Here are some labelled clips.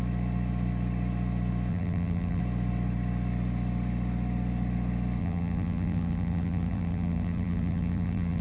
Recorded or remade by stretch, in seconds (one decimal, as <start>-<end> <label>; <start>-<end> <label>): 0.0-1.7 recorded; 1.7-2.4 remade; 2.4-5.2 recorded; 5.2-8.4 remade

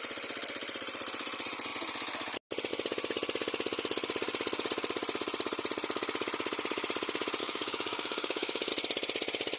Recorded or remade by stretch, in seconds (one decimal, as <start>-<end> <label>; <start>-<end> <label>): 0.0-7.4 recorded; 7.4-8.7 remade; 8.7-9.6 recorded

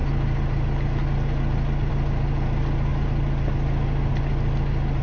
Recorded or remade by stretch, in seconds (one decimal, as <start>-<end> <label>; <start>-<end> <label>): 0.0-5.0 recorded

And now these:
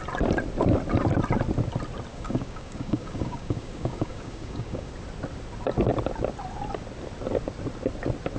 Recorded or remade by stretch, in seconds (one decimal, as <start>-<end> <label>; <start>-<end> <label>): 0.0-2.1 recorded; 2.1-4.9 remade; 4.9-8.4 recorded